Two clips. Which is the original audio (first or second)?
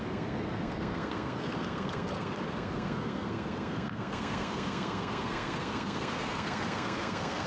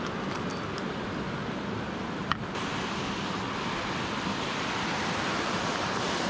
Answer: second